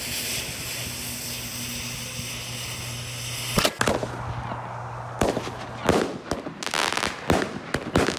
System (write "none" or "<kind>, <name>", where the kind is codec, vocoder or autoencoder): none